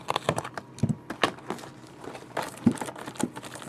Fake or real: real